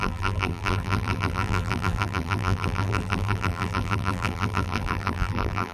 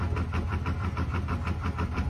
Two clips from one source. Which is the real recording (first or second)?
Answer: second